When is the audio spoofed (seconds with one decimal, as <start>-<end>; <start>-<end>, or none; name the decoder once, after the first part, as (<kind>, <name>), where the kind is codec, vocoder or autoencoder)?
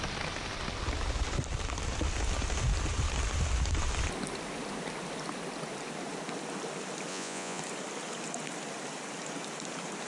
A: 7.1-7.6 (vocoder, Vocos)